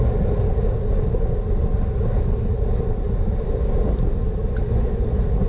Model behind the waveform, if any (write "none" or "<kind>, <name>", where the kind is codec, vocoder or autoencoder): none